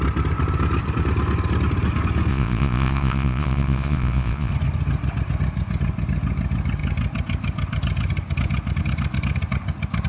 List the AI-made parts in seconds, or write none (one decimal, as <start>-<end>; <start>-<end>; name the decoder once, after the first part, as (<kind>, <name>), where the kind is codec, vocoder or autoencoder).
2.3-4.5 (vocoder, Vocos)